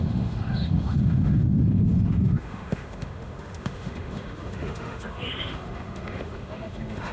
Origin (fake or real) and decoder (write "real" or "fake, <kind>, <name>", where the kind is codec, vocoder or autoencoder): fake, autoencoder, DAC-VAE